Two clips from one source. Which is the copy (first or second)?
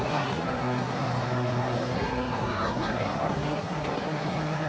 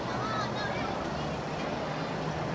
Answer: first